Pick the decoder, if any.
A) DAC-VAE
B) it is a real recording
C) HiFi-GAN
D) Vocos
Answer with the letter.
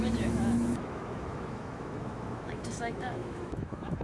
A